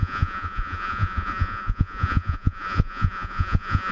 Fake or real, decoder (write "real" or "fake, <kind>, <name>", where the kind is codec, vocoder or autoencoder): fake, vocoder, Vocos